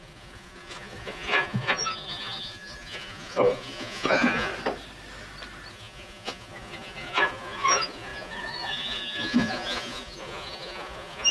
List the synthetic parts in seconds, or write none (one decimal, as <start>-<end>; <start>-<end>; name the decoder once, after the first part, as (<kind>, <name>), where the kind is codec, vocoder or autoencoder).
0.0-4.5 (vocoder, Vocos); 5.7-11.3